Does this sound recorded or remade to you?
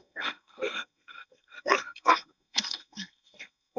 remade